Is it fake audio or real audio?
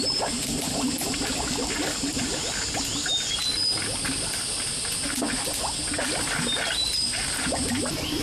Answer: real